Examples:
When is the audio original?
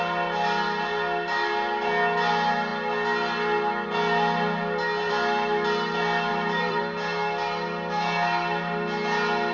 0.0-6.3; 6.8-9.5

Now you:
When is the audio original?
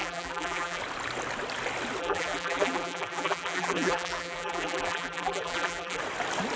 0.8-2.0; 6.0-6.6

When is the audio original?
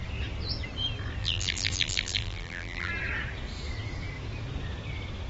0.0-1.2; 2.9-5.3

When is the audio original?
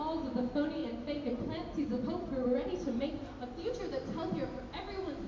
0.0-0.8; 3.7-5.3